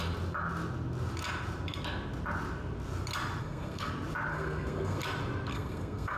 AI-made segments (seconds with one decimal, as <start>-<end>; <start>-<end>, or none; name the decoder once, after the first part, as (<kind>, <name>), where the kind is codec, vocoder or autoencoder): 3.4-3.9 (codec, SNAC); 4.3-5.0; 5.5-6.2